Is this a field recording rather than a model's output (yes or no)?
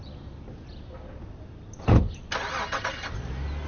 yes